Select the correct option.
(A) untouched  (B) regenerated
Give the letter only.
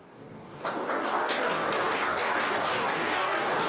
B